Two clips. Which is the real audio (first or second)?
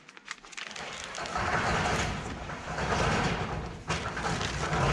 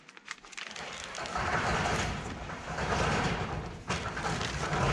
first